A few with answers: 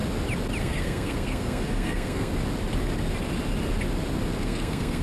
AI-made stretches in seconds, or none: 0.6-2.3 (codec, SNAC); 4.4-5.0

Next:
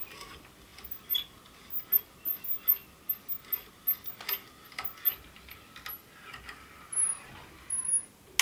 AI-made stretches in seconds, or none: none

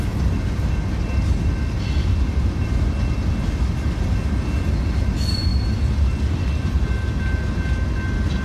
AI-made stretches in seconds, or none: none

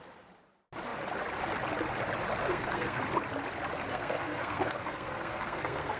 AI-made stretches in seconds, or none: 2.4-3.0 (codec, SNAC); 3.9-6.0

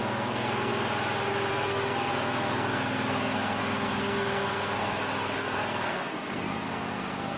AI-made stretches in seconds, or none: 0.0-0.7 (codec, SNAC); 1.5-7.4

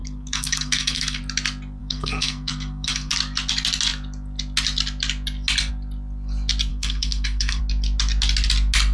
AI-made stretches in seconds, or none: 0.0-1.2 (codec, SNAC); 1.8-3.1; 6.7-7.6

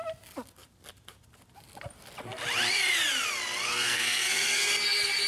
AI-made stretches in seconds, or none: 3.7-4.7 (codec, SNAC)

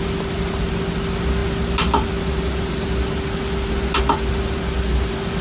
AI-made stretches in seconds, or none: none